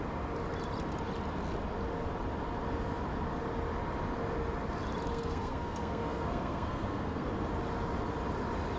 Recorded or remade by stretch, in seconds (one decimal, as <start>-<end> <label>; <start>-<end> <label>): 0.0-5.1 recorded; 5.1-7.3 remade; 7.3-8.8 recorded